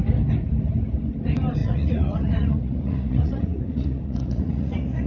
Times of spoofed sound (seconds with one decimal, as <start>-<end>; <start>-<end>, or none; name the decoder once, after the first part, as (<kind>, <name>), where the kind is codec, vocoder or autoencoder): 1.6-5.1 (vocoder, Vocos)